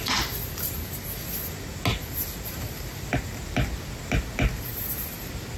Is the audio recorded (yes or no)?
yes